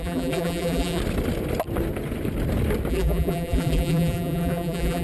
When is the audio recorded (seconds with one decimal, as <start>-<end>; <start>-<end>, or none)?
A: 1.0-2.9